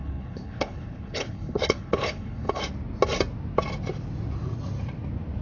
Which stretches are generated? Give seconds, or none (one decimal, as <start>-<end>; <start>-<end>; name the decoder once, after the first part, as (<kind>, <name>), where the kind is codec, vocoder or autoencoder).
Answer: 0.0-2.6 (codec, HILCodec)